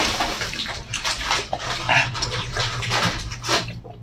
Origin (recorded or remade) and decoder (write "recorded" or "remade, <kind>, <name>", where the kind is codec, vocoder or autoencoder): recorded